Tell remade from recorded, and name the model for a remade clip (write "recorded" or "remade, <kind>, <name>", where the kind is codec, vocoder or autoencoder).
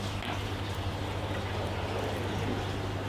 recorded